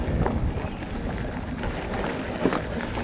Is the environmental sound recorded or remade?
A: recorded